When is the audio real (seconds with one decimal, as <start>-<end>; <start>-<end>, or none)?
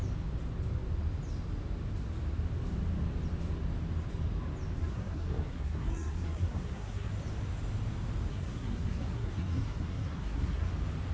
0.0-4.8; 7.1-8.3; 10.7-11.1